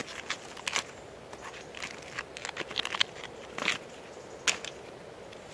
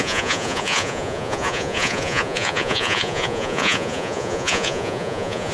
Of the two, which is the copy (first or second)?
second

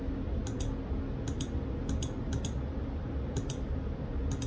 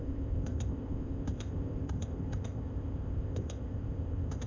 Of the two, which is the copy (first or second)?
second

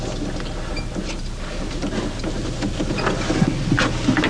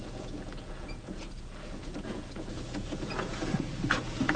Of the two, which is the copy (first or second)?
second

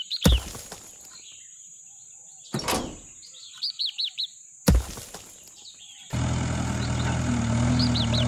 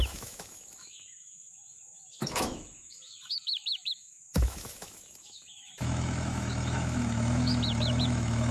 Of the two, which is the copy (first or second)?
second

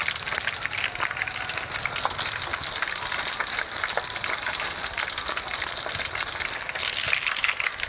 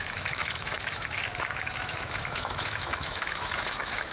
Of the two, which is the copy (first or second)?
second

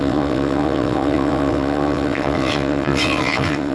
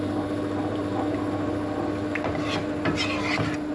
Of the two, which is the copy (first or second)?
first